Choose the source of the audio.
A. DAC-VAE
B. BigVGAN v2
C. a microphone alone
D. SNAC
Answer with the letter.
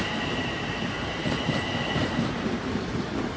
B